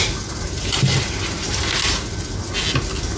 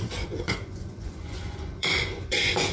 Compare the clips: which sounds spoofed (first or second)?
second